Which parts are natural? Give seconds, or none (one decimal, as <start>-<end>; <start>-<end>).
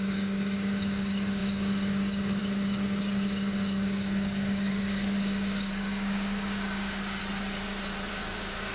7.2-8.1